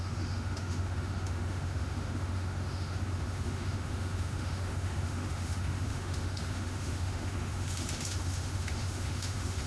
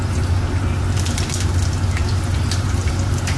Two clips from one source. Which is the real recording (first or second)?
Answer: second